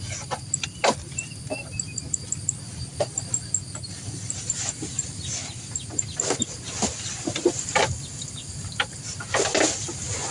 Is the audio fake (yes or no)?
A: no